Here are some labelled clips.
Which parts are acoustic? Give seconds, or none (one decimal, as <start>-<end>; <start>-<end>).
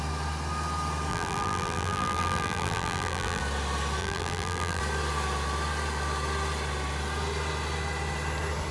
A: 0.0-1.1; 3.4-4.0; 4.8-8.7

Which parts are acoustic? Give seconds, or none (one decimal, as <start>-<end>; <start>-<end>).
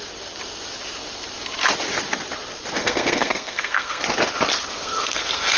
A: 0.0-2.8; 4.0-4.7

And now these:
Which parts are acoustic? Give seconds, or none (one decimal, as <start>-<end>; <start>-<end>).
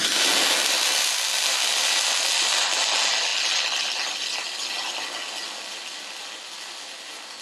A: 0.0-7.4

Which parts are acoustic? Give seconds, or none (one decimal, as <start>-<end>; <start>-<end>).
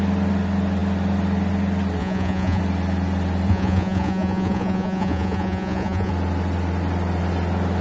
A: 0.0-2.0; 2.6-3.5; 6.1-7.8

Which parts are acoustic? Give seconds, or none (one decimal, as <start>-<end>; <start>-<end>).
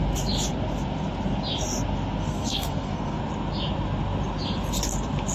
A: 0.0-2.2; 3.2-5.3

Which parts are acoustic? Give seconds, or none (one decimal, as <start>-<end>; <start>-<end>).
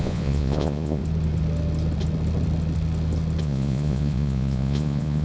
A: 1.0-3.4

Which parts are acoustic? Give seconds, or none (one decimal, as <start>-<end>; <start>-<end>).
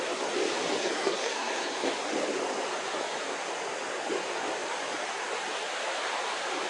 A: 0.0-0.8; 1.9-6.7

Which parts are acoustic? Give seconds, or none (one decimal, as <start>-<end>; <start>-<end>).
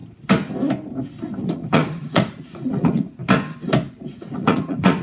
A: 0.0-1.4; 3.2-3.9